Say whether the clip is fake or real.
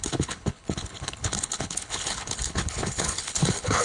fake